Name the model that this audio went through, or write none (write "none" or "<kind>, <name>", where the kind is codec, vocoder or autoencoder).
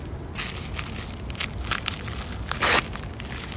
none